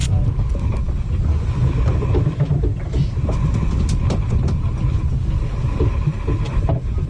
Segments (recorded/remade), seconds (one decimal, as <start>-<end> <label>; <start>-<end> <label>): 0.0-7.1 recorded